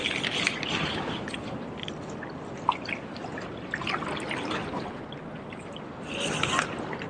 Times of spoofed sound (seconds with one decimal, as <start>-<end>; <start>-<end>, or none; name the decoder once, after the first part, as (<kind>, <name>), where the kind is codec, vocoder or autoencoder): none